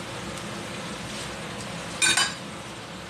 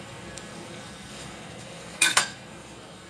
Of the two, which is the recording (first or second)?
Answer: first